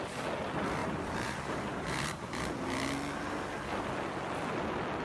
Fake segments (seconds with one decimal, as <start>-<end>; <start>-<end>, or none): 0.8-2.4